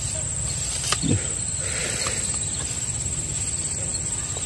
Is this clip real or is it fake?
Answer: real